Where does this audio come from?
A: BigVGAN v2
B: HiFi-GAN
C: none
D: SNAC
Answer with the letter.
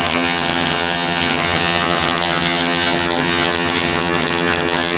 B